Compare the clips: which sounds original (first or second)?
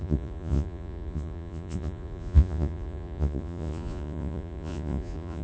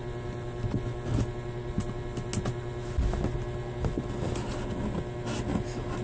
second